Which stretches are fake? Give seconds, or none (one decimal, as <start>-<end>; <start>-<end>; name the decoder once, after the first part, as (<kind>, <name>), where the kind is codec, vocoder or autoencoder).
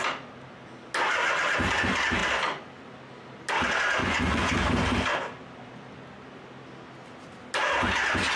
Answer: 4.0-4.5 (vocoder, Vocos)